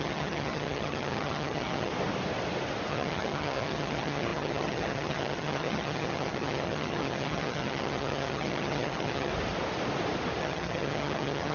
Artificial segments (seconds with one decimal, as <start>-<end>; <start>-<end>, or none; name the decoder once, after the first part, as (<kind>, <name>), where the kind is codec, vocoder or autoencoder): 0.0-1.9 (vocoder, HiFi-GAN); 2.9-9.3; 10.4-11.5

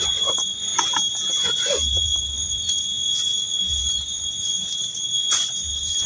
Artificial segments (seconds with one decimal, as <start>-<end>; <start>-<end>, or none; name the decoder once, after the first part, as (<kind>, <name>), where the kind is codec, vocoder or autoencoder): 0.0-0.7 (vocoder, Vocos); 1.3-6.1

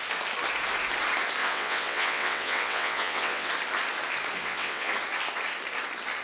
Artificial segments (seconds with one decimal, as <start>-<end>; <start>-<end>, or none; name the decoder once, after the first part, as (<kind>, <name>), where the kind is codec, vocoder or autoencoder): 1.4-3.5 (vocoder, WaveNeXt); 4.4-4.9

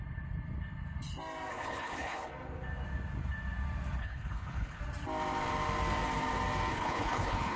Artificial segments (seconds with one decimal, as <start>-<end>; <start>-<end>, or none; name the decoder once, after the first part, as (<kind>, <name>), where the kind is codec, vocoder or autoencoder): 1.5-2.3 (codec, HILCodec); 4.0-4.8; 6.7-7.6